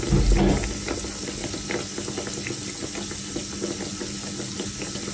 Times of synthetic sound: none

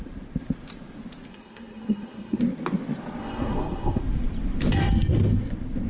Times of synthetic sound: 1.3-2.4 (codec, SNAC); 3.2-4.0

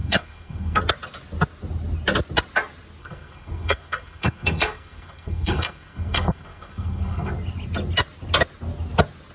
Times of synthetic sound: 0.0-0.8 (codec, SNAC); 3.0-7.3

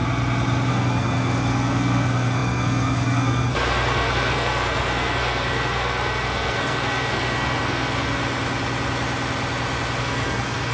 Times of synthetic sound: 0.7-8.2 (codec, SNAC); 10.0-10.7